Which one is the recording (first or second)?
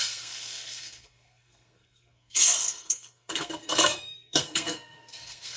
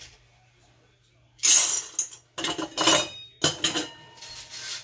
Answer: second